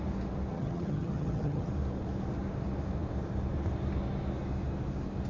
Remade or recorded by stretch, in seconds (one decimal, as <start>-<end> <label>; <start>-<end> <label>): 0.0-0.5 recorded; 0.5-1.7 remade; 1.7-5.3 recorded